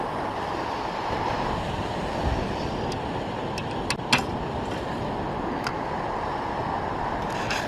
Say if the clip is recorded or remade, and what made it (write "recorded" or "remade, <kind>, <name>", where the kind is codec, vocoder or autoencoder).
recorded